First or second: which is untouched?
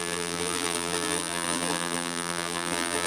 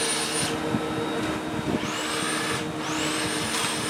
second